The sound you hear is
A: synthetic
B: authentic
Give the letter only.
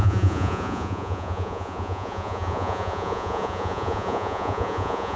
A